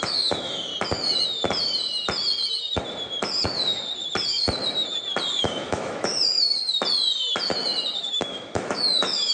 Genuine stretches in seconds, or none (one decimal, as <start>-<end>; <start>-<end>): 0.7-5.4; 6.1-8.0